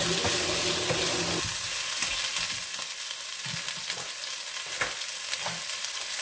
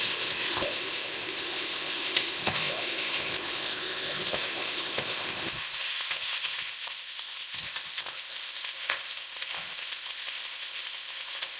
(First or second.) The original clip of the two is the first